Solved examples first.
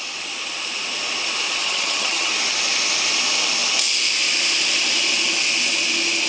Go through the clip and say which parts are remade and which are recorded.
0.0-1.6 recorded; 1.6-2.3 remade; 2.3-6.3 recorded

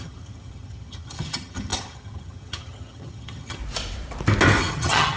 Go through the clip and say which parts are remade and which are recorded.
0.0-3.6 remade; 3.6-4.6 recorded; 4.6-5.2 remade